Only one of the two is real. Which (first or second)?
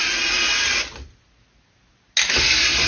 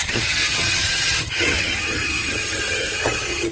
first